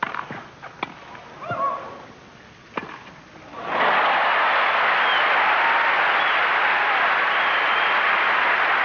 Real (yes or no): yes